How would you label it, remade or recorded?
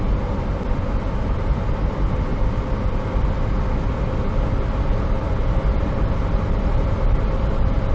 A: recorded